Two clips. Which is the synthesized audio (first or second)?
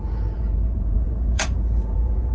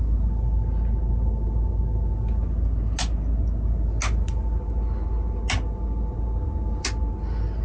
first